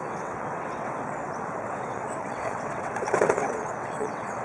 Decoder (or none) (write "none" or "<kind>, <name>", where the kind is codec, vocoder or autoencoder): vocoder, WaveNeXt